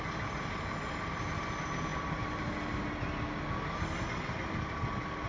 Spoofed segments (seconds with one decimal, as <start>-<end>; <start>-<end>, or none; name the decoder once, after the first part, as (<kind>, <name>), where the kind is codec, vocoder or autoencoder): 1.9-2.4 (vocoder, BigVGAN v2)